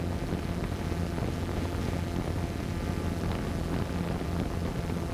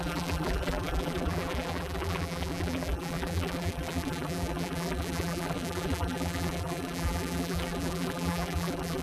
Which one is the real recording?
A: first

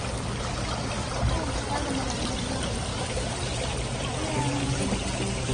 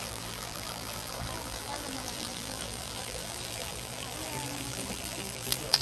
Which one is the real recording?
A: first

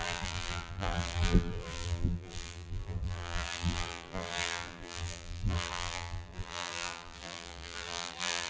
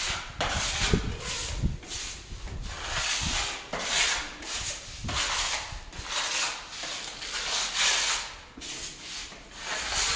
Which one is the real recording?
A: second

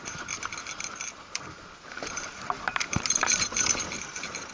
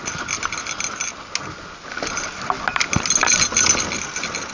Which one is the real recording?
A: second